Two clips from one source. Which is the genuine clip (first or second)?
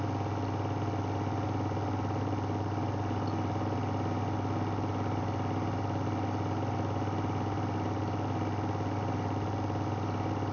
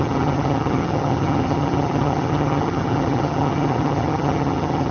first